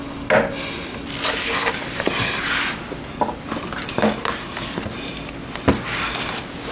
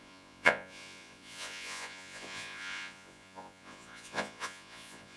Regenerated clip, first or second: second